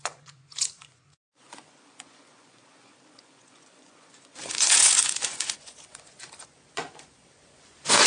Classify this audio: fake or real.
fake